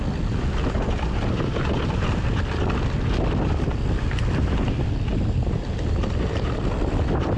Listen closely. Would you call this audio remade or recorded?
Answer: recorded